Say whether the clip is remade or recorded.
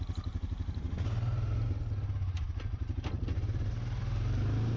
recorded